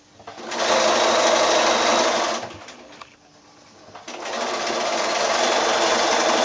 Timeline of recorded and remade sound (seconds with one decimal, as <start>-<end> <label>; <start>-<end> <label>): 0.0-6.4 recorded